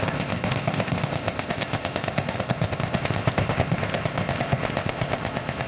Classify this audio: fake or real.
fake